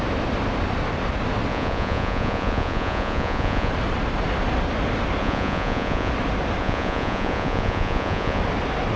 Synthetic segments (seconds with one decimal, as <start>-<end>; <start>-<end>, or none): 1.5-3.7; 5.2-6.1; 6.6-8.4